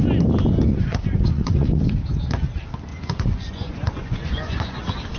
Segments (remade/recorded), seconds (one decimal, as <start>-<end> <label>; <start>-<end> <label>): 0.0-0.7 recorded; 0.7-1.9 remade; 1.9-2.9 recorded; 2.9-4.8 remade; 4.8-5.2 recorded